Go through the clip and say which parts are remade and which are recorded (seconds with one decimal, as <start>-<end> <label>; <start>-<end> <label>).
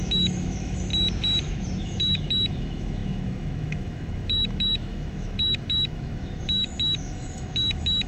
0.0-0.9 remade; 0.9-1.8 recorded; 1.8-8.1 remade